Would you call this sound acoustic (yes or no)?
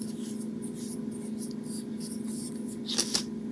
yes